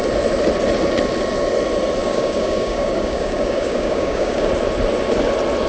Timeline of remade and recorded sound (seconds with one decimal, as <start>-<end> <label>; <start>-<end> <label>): 0.0-2.0 recorded; 2.0-4.5 remade; 4.5-5.7 recorded